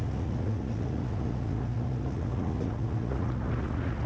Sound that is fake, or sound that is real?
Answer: fake